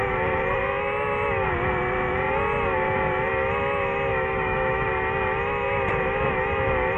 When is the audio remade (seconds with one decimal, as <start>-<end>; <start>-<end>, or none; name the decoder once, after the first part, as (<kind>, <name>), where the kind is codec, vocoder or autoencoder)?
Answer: 4.1-4.9 (autoencoder, DAC-VAE)